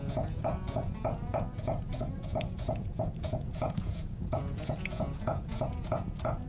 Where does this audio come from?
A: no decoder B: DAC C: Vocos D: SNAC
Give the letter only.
C